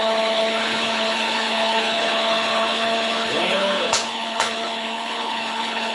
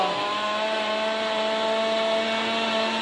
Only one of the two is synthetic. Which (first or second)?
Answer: first